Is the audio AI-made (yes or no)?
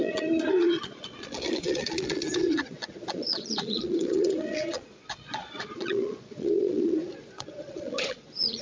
yes